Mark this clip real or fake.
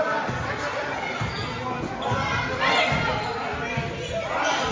real